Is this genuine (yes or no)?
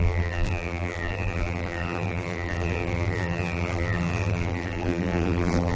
no